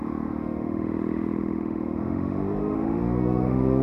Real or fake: fake